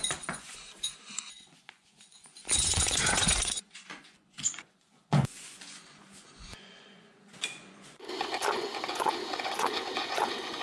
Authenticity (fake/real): fake